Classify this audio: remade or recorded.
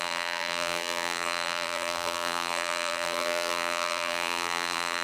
remade